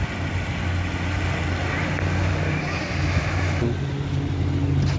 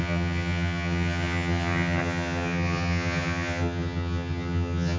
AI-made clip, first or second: second